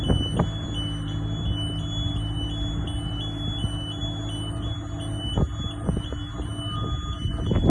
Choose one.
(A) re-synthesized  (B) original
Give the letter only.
B